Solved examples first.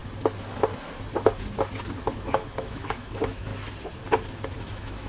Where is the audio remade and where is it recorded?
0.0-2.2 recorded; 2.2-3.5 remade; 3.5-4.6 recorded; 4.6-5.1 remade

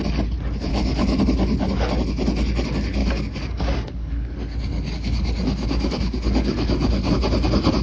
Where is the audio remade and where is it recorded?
0.0-0.7 recorded; 0.7-1.2 remade; 1.2-3.0 recorded; 3.0-7.1 remade; 7.1-7.8 recorded